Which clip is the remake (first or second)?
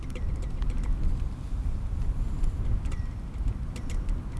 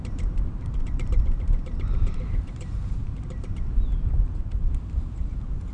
second